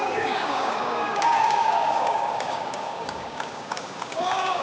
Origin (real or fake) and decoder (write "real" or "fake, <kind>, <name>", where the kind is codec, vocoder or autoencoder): fake, codec, DAC